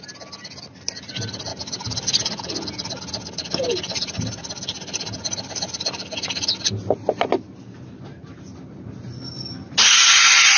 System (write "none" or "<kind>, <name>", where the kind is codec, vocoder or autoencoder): none